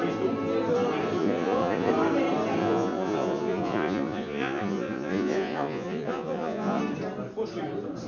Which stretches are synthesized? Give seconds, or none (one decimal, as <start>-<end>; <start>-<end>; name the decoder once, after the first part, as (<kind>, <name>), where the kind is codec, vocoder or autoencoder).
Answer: 1.2-1.9 (vocoder, Vocos); 2.6-6.8